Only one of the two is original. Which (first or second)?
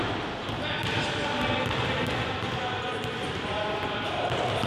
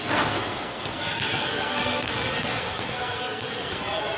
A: first